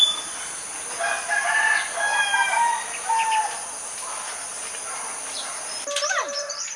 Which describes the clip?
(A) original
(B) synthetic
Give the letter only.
A